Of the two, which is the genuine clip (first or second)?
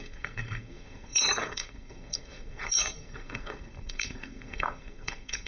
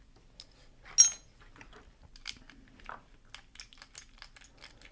second